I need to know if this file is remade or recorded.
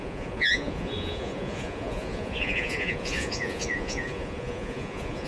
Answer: remade